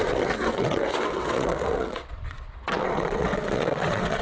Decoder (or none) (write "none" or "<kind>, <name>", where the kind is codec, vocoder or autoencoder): vocoder, WaveNeXt